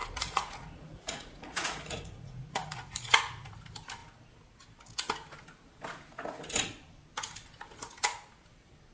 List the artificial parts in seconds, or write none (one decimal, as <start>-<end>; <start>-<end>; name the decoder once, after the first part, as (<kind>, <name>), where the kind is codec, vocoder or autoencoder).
0.0-3.5 (vocoder, Vocos)